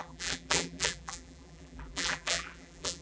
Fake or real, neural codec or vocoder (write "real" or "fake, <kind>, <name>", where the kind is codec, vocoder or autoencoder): fake, vocoder, BigVGAN v2